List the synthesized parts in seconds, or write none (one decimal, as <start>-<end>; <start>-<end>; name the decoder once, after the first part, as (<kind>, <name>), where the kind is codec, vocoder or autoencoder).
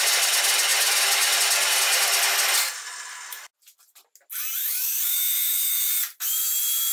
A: 4.6-5.9 (codec, DAC)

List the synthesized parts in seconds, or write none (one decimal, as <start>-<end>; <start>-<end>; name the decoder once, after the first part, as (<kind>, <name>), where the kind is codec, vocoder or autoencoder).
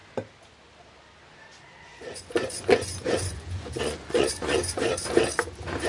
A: 1.9-4.8 (vocoder, Vocos)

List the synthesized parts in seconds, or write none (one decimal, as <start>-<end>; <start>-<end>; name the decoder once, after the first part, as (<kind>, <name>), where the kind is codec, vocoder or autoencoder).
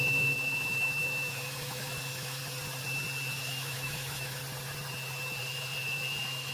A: 0.0-2.4 (autoencoder, DAC-VAE); 3.3-4.4; 5.4-6.5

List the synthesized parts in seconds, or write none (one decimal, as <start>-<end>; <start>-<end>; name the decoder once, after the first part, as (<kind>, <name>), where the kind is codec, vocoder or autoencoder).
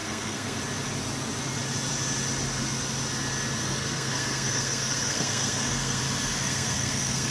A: 0.0-0.6 (codec, SNAC); 3.6-6.0; 6.4-7.3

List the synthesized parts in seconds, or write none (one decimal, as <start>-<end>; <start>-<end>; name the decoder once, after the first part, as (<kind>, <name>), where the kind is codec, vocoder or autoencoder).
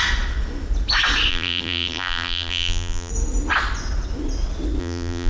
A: 1.3-3.1 (vocoder, BigVGAN v2); 4.8-5.3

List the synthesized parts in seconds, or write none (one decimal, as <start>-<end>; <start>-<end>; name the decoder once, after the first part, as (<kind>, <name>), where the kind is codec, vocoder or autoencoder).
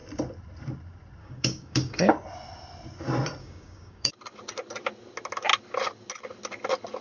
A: 1.2-2.1 (codec, DAC); 3.4-4.1